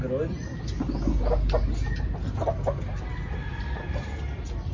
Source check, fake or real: real